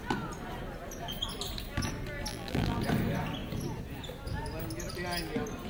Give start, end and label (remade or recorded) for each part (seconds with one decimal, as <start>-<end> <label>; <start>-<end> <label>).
0.0-2.3 recorded; 2.3-2.8 remade; 2.8-5.7 recorded